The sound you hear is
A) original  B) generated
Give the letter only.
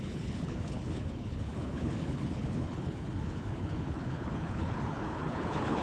B